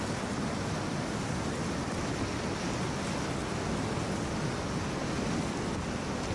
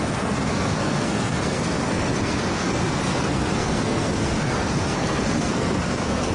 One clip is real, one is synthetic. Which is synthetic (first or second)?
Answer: second